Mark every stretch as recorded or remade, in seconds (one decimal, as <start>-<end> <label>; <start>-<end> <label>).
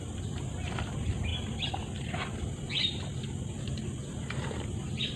0.0-5.2 recorded